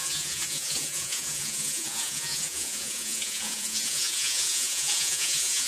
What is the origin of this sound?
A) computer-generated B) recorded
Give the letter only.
A